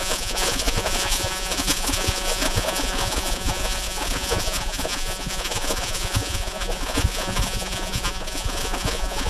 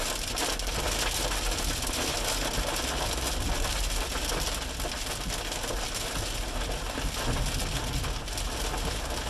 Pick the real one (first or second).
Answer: second